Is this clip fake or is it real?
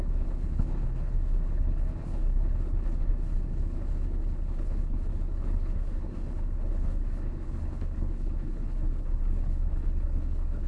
fake